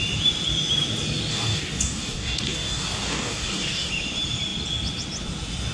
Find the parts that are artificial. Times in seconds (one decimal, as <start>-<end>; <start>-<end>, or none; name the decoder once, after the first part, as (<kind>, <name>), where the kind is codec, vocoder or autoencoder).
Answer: 1.3-3.9 (codec, DAC)

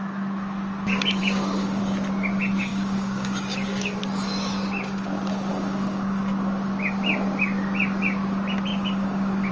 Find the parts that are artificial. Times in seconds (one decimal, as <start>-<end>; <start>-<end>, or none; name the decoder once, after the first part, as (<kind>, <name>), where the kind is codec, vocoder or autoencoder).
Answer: 1.2-1.8 (codec, DAC); 2.7-4.0; 5.5-6.2; 8.7-9.5

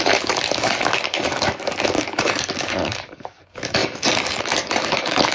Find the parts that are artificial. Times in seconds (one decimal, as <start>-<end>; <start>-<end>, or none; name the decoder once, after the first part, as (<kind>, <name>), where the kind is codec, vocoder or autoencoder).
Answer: 0.0-5.3 (codec, DAC)

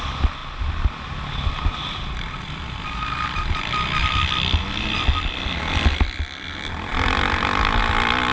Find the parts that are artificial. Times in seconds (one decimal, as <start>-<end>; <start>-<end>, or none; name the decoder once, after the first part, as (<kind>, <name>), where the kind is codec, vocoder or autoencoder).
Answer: none

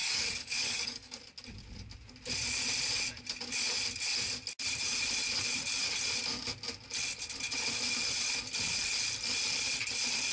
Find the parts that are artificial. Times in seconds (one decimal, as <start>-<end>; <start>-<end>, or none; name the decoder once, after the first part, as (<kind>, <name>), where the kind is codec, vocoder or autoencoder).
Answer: 0.0-1.2 (codec, DAC)

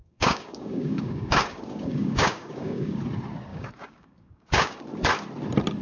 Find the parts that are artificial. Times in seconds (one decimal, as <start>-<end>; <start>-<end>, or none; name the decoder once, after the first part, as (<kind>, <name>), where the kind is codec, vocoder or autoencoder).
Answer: 0.0-3.0 (codec, DAC); 3.5-4.8